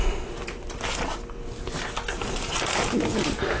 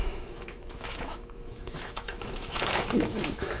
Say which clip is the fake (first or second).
second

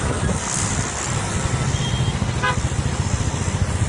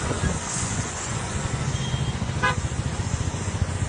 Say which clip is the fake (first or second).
second